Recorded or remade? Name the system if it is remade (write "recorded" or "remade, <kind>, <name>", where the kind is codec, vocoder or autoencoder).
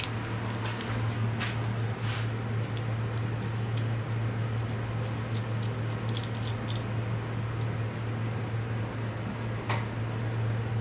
recorded